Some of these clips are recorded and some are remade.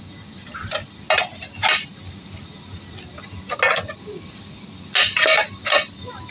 recorded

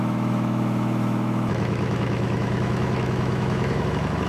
remade